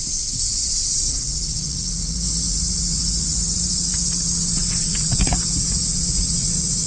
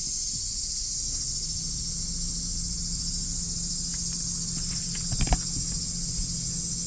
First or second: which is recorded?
second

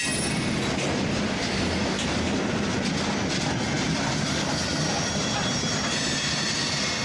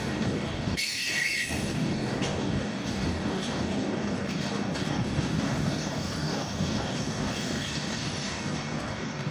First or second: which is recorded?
first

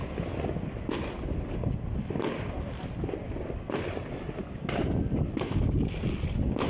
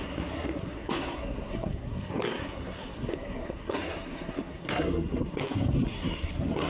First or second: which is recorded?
first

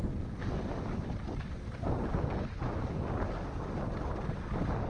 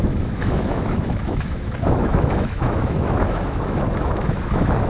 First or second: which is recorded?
first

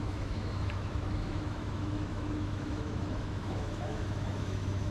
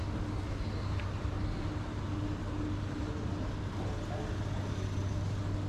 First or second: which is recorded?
second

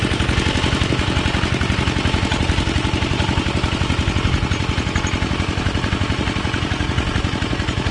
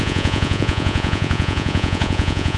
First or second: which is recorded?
first